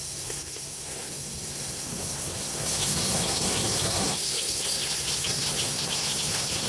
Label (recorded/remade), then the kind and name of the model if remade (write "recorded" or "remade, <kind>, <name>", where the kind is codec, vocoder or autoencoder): remade, codec, SNAC